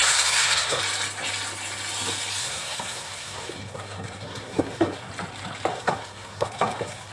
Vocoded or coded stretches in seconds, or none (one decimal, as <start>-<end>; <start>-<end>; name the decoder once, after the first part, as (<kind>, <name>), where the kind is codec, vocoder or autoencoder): 0.0-0.8 (codec, SNAC); 2.4-5.1; 5.7-7.1